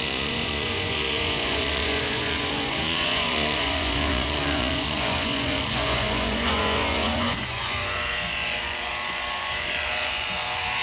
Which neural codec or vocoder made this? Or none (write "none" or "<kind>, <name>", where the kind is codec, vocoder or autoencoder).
vocoder, Vocos